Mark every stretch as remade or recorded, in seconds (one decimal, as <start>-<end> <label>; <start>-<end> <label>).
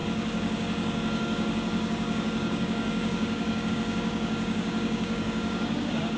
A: 0.0-6.2 remade